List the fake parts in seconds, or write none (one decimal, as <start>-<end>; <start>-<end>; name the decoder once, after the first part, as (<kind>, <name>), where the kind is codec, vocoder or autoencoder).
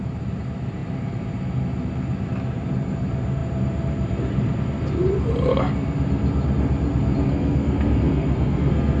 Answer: 7.3-9.0 (codec, SNAC)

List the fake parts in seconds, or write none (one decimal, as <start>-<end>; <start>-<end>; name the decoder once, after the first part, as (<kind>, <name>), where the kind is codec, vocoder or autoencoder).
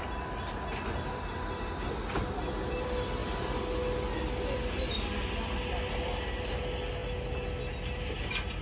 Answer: none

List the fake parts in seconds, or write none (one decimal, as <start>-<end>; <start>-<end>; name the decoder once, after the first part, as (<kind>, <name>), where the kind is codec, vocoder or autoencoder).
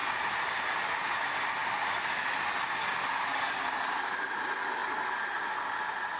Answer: none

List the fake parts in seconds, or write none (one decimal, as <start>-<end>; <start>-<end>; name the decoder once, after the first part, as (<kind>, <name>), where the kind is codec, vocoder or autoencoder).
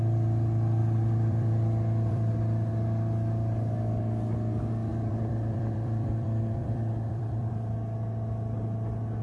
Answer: 0.8-2.3 (vocoder, BigVGAN v2); 4.9-7.5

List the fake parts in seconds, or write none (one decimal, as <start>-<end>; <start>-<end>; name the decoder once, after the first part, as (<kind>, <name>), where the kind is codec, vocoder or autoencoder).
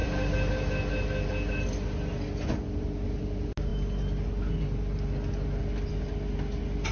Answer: 0.0-0.5 (vocoder, BigVGAN v2)